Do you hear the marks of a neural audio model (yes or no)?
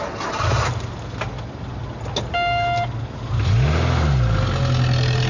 no